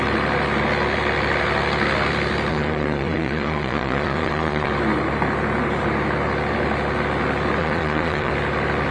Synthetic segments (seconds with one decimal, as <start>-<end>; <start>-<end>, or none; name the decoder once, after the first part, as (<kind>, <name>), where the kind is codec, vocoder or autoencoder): 2.5-4.7 (vocoder, Vocos); 7.6-8.3